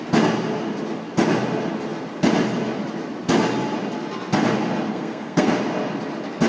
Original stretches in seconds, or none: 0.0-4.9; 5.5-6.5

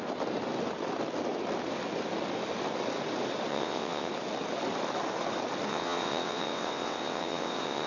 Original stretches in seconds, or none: 0.0-3.5; 4.1-5.7

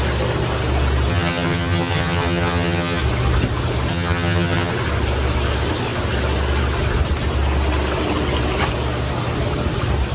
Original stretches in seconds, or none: 0.0-1.1; 3.0-3.9; 4.7-10.1

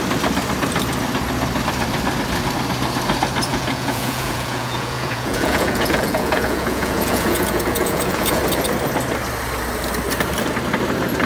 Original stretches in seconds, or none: 0.0-3.5; 8.4-11.3

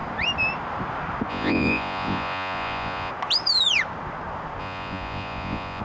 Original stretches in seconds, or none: 0.0-1.3; 3.1-4.6

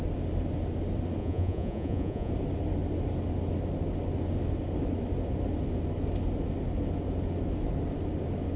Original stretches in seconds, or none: 0.0-1.2; 2.3-8.6